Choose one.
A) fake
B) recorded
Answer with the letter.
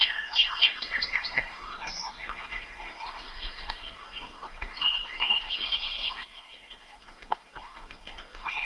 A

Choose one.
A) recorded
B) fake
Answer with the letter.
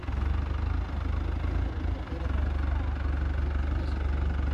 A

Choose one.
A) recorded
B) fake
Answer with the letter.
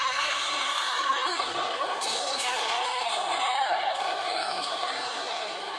B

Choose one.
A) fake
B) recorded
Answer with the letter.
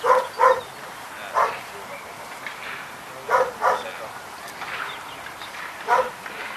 B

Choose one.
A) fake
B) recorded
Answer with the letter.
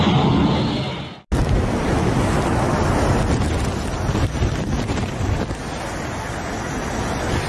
B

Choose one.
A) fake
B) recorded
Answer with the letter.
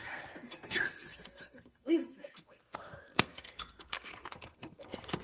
A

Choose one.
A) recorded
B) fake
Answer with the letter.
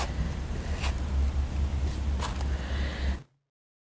A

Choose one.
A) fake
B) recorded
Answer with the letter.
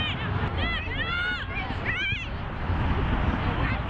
B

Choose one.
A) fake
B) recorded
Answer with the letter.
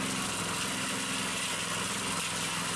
B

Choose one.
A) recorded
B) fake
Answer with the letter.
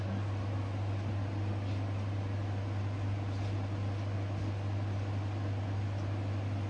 A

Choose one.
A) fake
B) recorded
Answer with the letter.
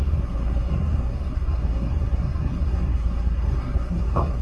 A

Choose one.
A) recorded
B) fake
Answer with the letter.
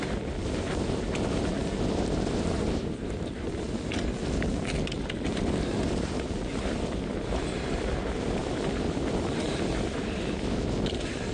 A